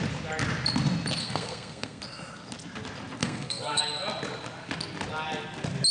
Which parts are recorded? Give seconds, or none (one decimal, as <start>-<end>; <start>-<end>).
0.0-1.2; 2.0-3.2; 3.8-5.9